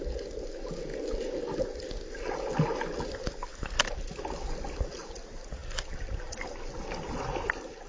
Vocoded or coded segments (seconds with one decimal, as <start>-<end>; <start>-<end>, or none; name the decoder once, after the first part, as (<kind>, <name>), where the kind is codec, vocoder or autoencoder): none